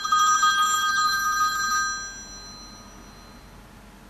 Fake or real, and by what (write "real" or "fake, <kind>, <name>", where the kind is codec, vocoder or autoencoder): real